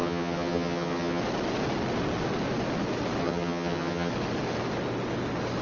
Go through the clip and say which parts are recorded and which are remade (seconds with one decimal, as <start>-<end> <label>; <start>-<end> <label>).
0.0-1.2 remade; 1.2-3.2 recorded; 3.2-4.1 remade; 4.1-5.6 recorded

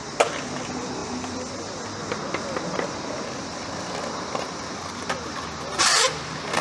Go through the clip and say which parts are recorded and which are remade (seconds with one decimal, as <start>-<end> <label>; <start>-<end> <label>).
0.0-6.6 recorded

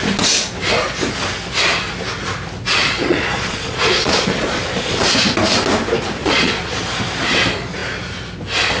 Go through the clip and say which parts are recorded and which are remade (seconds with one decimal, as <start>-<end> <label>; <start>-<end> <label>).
0.0-2.8 recorded; 2.8-5.1 remade; 5.1-6.2 recorded; 6.2-6.8 remade; 6.8-8.8 recorded